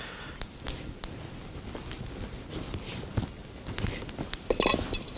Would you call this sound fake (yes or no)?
no